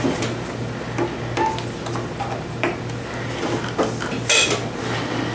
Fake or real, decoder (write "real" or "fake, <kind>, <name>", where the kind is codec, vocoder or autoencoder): real